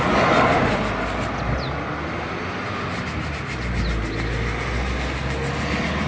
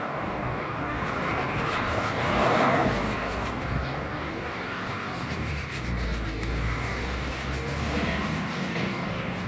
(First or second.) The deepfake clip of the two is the second